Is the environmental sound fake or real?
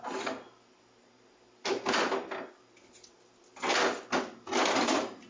real